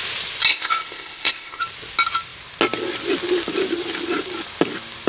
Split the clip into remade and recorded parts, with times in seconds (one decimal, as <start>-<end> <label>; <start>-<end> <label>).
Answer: 0.0-0.5 recorded; 0.5-1.6 remade; 1.6-5.1 recorded